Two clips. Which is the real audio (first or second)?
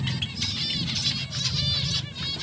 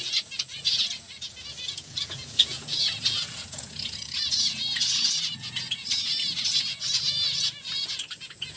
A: first